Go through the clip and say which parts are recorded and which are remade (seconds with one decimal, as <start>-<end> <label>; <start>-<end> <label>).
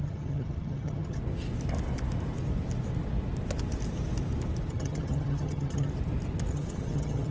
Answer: 0.0-1.2 remade; 1.2-4.7 recorded; 4.7-5.9 remade; 5.9-6.5 recorded; 6.5-7.3 remade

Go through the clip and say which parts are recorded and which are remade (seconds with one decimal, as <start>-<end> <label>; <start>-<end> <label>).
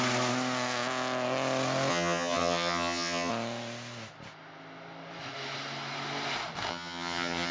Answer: 0.0-1.9 recorded; 1.9-3.3 remade; 3.3-6.7 recorded; 6.7-7.5 remade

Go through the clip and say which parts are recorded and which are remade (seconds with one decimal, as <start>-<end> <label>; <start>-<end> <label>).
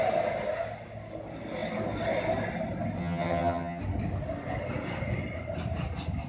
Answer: 0.0-3.0 recorded; 3.0-3.8 remade; 3.8-6.3 recorded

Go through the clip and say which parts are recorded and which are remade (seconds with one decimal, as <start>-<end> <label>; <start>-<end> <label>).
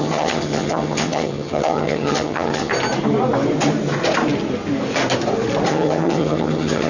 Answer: 0.0-2.7 remade; 2.7-5.7 recorded; 5.7-6.9 remade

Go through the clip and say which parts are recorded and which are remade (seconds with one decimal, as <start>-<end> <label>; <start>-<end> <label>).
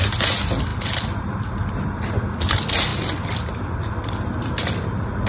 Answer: 0.0-5.3 recorded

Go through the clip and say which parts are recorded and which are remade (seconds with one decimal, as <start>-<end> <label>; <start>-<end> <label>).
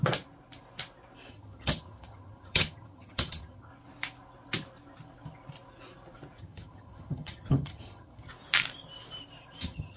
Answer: 0.0-1.3 recorded; 1.3-3.7 remade; 3.7-6.4 recorded; 6.4-8.3 remade; 8.3-9.6 recorded; 9.6-10.0 remade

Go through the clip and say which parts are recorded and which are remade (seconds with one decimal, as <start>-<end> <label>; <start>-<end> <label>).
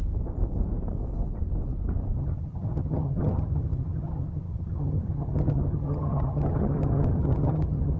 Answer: 0.0-2.2 recorded; 2.2-8.0 remade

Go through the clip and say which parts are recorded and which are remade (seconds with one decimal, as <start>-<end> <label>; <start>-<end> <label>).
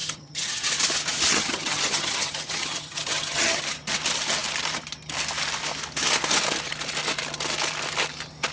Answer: 0.0-0.7 remade; 0.7-1.3 recorded; 1.3-3.6 remade; 3.6-8.5 recorded